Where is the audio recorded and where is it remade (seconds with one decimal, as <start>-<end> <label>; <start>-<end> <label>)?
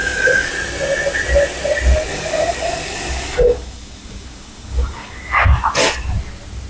0.0-0.5 remade; 0.5-2.1 recorded; 2.1-5.3 remade; 5.3-6.7 recorded